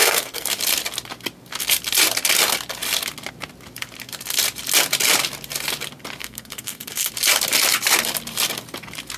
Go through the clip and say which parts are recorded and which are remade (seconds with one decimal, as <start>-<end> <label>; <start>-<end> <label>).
0.0-0.5 remade; 0.5-6.2 recorded; 6.2-7.1 remade; 7.1-9.2 recorded